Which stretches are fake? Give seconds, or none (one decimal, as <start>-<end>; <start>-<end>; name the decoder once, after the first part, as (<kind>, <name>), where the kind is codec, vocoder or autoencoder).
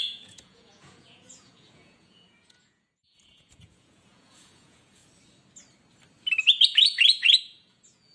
0.0-5.0 (vocoder, Vocos); 6.4-8.1